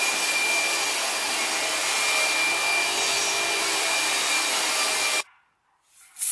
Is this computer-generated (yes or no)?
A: no